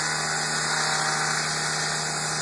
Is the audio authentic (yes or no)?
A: yes